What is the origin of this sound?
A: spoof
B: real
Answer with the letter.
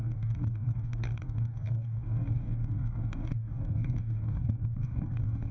A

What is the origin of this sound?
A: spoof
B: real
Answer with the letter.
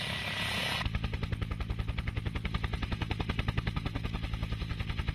B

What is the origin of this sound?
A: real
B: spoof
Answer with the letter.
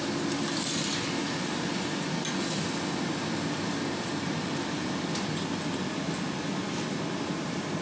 A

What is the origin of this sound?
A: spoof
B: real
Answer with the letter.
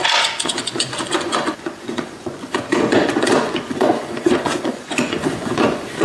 A